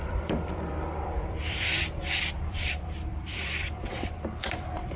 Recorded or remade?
remade